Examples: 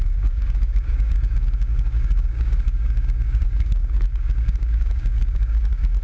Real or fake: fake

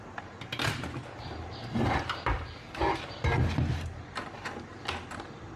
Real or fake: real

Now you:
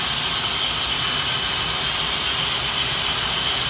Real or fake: real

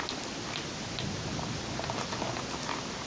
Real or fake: real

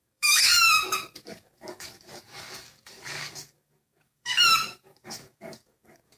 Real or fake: fake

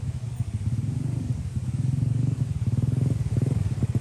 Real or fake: fake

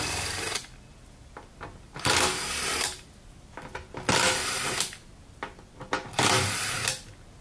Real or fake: real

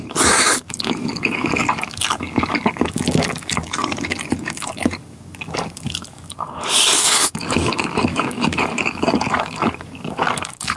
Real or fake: fake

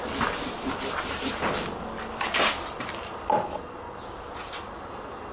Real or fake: real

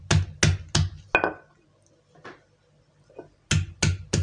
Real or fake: real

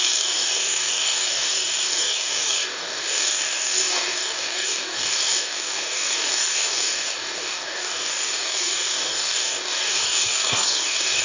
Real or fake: fake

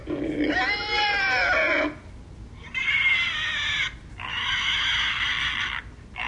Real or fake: real